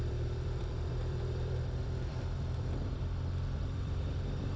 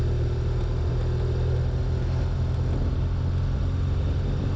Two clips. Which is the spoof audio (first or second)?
first